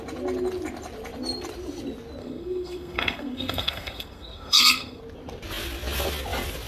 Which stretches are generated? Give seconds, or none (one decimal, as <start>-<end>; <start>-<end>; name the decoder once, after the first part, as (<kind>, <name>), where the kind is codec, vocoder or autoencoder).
2.2-5.0 (codec, SNAC)